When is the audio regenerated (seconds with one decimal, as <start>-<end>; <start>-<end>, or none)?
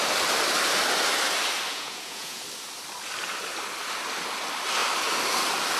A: 1.7-2.4